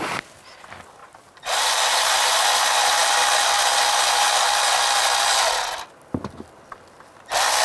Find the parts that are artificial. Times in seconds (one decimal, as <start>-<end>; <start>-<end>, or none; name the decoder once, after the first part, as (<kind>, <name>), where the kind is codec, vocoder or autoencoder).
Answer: 1.0-2.4 (vocoder, BigVGAN v2)